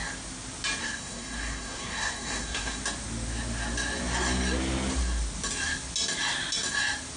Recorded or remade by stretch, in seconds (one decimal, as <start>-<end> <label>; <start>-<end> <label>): 0.0-0.8 recorded; 0.8-2.8 remade; 2.8-7.2 recorded